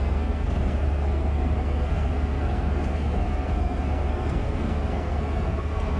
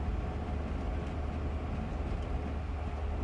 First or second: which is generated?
first